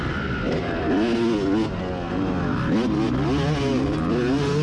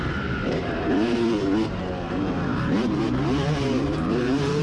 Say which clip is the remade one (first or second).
second